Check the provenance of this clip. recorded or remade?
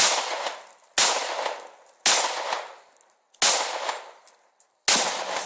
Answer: recorded